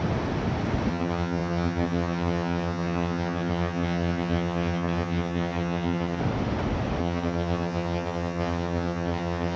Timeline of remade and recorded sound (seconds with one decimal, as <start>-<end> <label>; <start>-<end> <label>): 0.0-0.9 recorded; 0.9-6.2 remade; 6.2-7.0 recorded; 7.0-9.6 remade

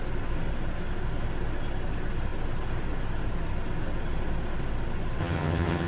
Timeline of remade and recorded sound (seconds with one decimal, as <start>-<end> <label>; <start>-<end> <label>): 0.0-5.2 recorded; 5.2-5.9 remade

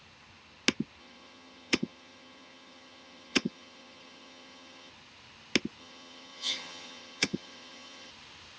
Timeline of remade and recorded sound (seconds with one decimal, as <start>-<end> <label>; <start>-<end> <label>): 0.0-1.0 recorded; 1.0-4.9 remade; 4.9-5.8 recorded; 5.8-8.1 remade; 8.1-8.6 recorded

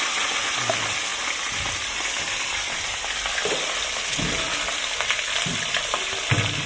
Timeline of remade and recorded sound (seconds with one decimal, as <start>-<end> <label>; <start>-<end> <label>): 0.0-6.7 recorded

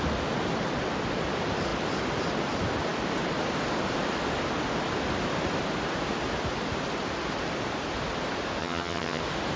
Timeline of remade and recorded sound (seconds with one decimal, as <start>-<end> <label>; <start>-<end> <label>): 0.0-8.6 recorded; 8.6-9.2 remade; 9.2-9.6 recorded

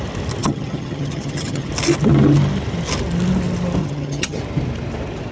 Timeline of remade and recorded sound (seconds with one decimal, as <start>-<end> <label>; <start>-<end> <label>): 0.0-0.4 recorded; 0.4-1.7 remade; 1.7-3.8 recorded; 3.8-4.4 remade; 4.4-5.3 recorded